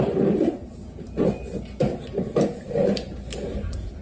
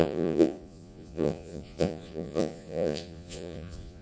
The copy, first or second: second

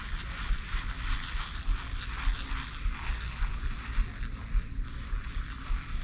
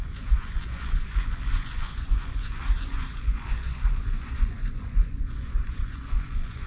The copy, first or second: second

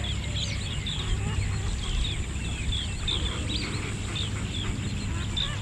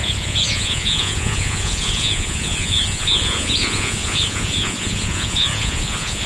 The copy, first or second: second